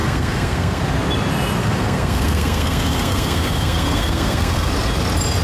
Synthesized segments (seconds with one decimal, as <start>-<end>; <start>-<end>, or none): 0.0-0.8; 1.6-4.7